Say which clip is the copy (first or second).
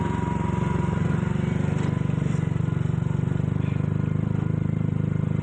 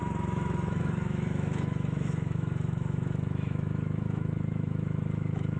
second